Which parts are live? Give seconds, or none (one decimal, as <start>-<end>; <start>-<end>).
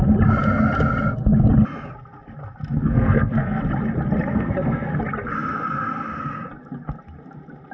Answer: 0.0-2.8; 3.6-4.3; 5.0-7.7